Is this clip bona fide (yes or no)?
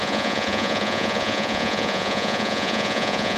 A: no